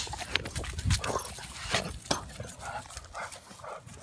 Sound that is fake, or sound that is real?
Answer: real